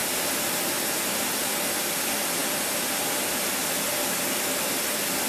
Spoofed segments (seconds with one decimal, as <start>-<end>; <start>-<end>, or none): none